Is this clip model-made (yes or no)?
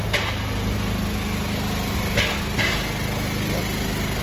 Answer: no